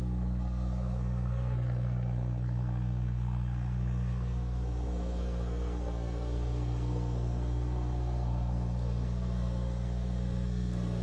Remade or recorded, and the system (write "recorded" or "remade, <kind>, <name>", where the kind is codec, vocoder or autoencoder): remade, codec, SNAC